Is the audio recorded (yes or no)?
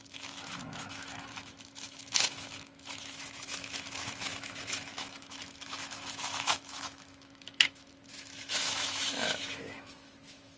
no